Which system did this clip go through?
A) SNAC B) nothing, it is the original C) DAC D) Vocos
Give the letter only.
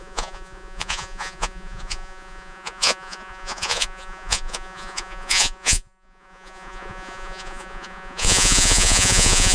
D